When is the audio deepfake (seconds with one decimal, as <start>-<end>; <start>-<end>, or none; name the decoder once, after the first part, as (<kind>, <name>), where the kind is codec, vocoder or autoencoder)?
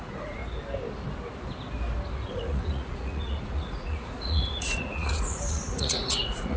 0.0-0.4 (vocoder, Vocos); 2.3-6.6